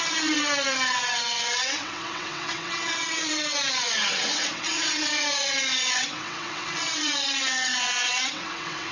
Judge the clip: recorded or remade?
remade